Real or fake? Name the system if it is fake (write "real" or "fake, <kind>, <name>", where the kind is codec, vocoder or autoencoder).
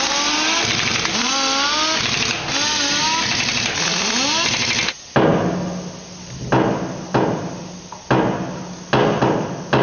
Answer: real